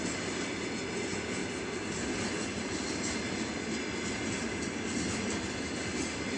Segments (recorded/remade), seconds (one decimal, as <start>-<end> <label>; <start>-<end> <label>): 0.0-6.4 recorded